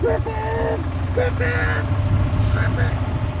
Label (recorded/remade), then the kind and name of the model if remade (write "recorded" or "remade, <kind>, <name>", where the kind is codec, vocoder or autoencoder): recorded